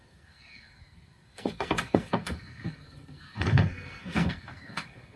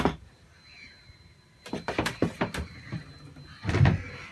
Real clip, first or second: second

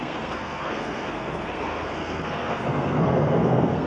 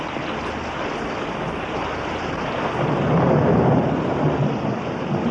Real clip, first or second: second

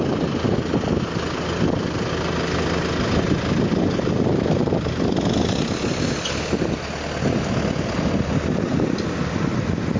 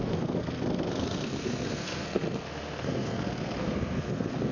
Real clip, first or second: first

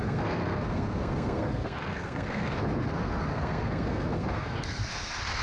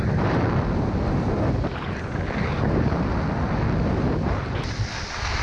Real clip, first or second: second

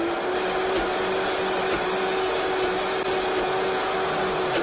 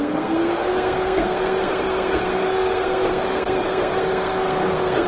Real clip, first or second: first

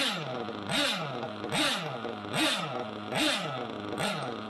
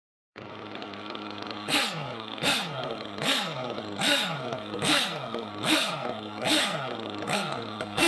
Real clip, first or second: first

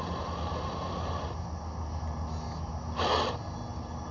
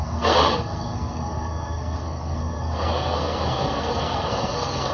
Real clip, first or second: first